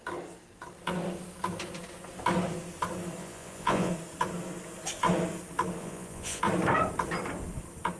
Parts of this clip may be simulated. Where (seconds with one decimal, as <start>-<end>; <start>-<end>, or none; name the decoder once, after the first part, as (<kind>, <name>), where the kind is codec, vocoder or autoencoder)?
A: 3.2-3.9 (vocoder, Vocos); 5.8-6.4